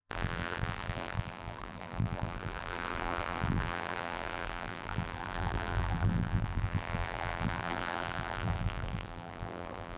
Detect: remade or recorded remade